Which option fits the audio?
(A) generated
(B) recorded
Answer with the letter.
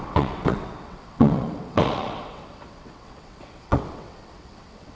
A